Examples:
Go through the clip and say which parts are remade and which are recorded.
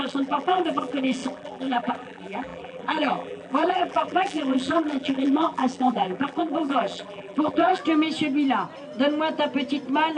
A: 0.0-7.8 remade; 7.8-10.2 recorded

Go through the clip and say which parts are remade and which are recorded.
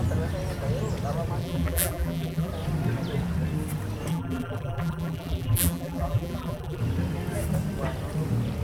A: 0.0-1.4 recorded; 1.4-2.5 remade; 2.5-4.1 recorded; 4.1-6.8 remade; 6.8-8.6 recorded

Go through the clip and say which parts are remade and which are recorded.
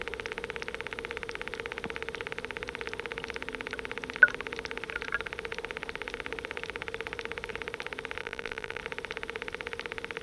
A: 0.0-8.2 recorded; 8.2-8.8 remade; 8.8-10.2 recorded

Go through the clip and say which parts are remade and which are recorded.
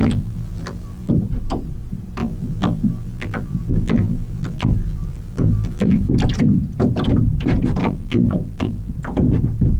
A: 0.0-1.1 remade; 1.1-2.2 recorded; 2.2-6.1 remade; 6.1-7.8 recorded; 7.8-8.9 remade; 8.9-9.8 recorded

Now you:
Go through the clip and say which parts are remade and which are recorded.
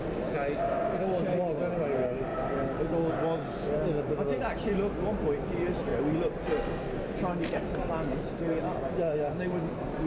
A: 0.0-2.3 recorded; 2.3-3.1 remade; 3.1-10.1 recorded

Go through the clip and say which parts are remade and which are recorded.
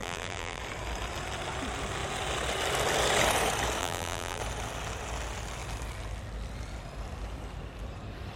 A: 0.0-0.6 remade; 0.6-3.8 recorded; 3.8-4.4 remade; 4.4-8.4 recorded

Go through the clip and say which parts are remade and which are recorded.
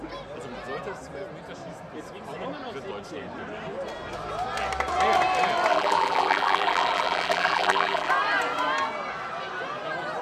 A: 0.0-5.7 recorded; 5.7-8.1 remade; 8.1-10.2 recorded